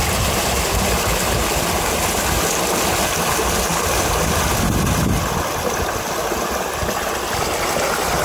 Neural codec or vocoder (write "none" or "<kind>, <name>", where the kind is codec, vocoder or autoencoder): none